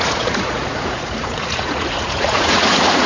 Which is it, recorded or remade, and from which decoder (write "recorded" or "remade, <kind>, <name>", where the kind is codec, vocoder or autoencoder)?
remade, vocoder, Vocos